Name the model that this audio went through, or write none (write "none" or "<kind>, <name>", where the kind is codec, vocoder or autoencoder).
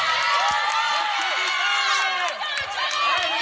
vocoder, BigVGAN v2